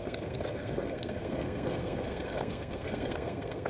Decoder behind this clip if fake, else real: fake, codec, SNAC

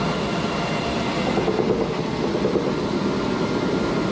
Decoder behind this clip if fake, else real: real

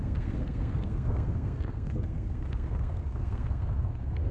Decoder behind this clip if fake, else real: fake, codec, SNAC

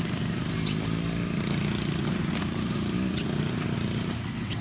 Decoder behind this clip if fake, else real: real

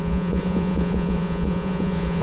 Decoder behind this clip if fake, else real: fake, vocoder, Vocos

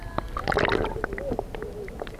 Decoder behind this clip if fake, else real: real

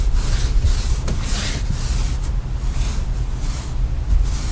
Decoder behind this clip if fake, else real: real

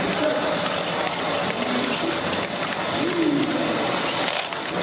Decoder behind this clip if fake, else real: real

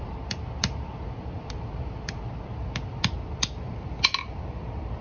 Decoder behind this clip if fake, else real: real